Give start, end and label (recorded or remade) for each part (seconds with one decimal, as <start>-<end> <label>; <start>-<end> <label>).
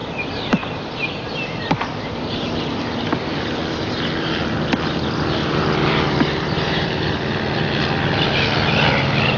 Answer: 0.0-1.9 recorded; 1.9-2.8 remade; 2.8-5.4 recorded; 5.4-6.9 remade; 6.9-9.4 recorded